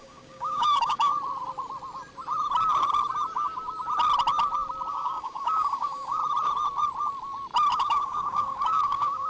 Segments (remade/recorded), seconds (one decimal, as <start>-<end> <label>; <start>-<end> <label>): 0.0-1.1 remade; 1.1-4.9 recorded; 4.9-6.2 remade; 6.2-7.7 recorded; 7.7-9.3 remade